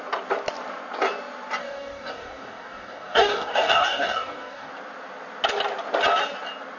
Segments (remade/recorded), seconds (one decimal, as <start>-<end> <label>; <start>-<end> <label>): 0.0-1.6 recorded; 1.6-4.7 remade; 4.7-6.8 recorded

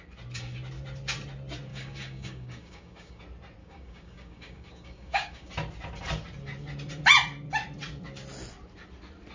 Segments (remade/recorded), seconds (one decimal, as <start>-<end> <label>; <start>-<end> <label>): 0.0-1.7 recorded; 1.7-3.2 remade; 3.2-3.6 recorded; 3.6-5.5 remade; 5.5-9.3 recorded

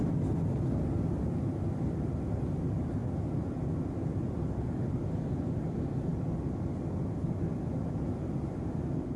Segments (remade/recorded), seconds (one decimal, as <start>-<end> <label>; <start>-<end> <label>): 0.0-9.2 recorded

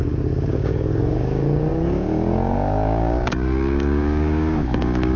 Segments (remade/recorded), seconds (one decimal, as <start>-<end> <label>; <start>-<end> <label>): 0.0-5.2 remade